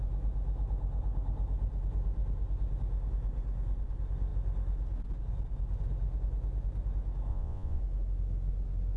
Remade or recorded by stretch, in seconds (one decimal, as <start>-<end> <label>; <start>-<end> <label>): 0.0-7.3 recorded; 7.3-7.8 remade; 7.8-9.0 recorded